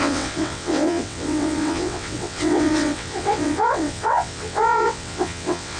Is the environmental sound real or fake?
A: fake